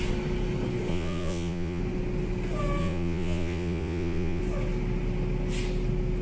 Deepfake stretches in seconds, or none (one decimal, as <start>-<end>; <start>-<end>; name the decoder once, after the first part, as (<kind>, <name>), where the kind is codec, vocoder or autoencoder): 0.9-1.8 (vocoder, Vocos); 2.8-4.4